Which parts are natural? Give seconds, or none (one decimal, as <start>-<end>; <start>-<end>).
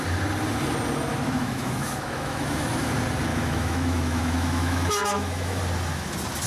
0.0-1.1; 2.9-3.3; 5.6-6.5